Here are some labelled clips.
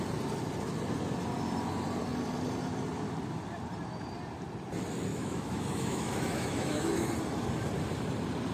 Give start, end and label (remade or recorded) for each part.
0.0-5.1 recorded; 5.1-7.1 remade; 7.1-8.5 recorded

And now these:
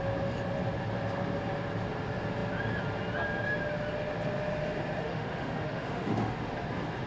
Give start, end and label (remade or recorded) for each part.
0.0-5.0 recorded; 5.0-6.5 remade; 6.5-7.1 recorded